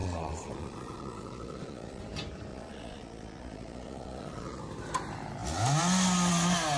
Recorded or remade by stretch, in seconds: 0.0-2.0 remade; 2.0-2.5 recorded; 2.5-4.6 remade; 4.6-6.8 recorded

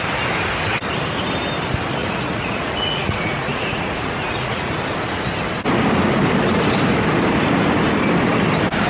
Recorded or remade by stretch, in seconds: 0.0-2.0 recorded; 2.0-4.7 remade; 4.7-8.9 recorded

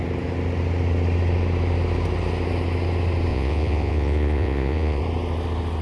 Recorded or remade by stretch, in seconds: 0.0-3.3 recorded; 3.3-5.0 remade; 5.0-5.8 recorded

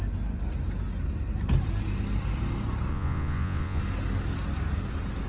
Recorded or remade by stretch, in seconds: 0.0-2.9 recorded; 2.9-3.8 remade; 3.8-5.3 recorded

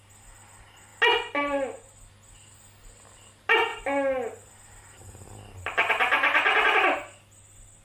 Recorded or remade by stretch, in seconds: 0.0-7.8 recorded

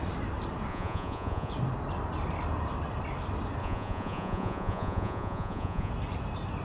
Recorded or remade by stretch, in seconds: 0.0-0.7 recorded; 0.7-1.5 remade; 1.5-3.6 recorded; 3.6-5.9 remade; 5.9-6.6 recorded

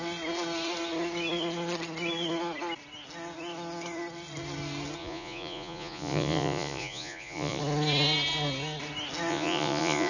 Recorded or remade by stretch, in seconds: 0.0-5.0 recorded; 5.0-7.6 remade; 7.6-9.3 recorded; 9.3-10.1 remade

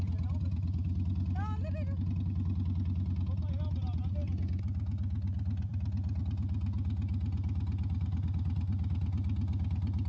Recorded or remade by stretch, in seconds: 0.0-10.1 recorded